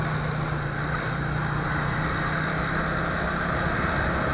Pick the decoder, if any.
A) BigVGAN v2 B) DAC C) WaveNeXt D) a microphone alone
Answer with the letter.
D